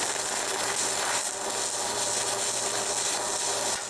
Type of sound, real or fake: real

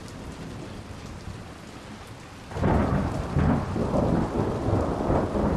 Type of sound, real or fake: real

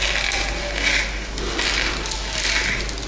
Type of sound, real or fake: real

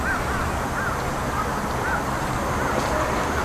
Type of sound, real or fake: real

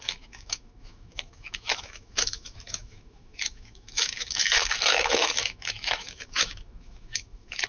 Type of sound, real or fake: fake